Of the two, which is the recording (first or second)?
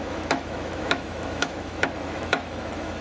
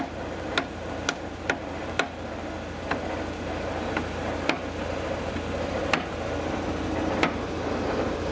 second